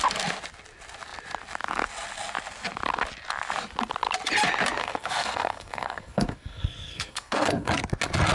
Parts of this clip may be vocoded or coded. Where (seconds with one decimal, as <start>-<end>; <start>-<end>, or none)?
4.8-7.8